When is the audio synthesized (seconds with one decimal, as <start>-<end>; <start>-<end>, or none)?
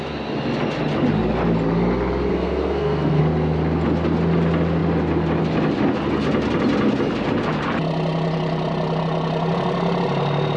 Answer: 2.3-3.2